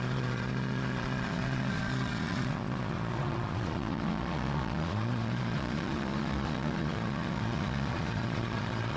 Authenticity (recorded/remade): remade